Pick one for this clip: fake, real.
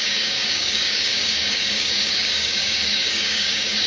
fake